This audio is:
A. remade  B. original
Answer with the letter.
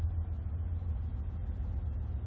B